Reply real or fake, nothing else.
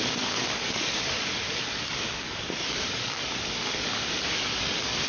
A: fake